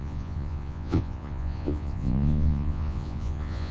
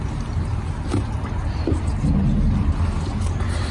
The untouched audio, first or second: second